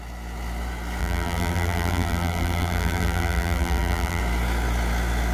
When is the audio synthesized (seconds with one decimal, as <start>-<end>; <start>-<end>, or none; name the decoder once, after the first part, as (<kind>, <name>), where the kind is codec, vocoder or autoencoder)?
1.0-4.2 (vocoder, BigVGAN v2)